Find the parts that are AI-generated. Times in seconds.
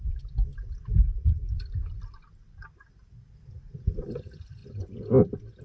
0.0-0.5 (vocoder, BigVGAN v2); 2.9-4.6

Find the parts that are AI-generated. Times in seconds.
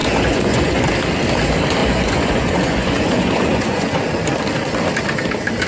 0.0-0.9 (vocoder, Vocos); 1.8-4.0